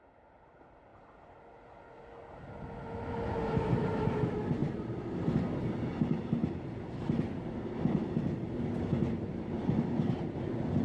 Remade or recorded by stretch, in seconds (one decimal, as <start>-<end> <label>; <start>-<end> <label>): 0.0-0.9 recorded; 0.9-3.1 remade; 3.1-4.6 recorded; 4.6-5.3 remade; 5.3-6.4 recorded; 6.4-9.8 remade; 9.8-10.8 recorded